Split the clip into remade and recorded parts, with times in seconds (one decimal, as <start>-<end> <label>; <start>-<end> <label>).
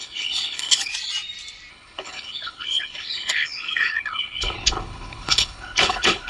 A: 0.0-0.9 remade; 0.9-1.7 recorded; 1.7-6.3 remade